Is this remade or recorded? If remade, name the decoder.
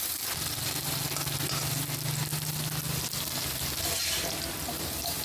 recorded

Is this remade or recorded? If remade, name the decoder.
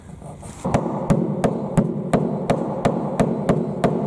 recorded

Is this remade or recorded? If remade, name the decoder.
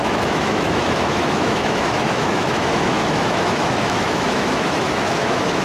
remade, autoencoder, DAC-VAE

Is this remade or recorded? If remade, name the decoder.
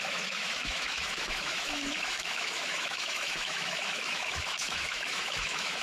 remade, autoencoder, DAC-VAE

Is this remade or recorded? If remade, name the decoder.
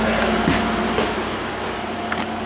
recorded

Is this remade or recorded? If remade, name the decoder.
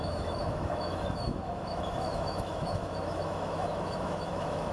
remade, autoencoder, DAC-VAE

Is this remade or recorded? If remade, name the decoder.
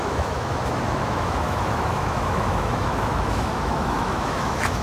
remade, autoencoder, DAC-VAE